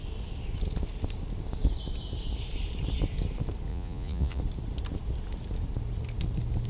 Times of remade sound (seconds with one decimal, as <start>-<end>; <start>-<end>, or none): 3.7-4.4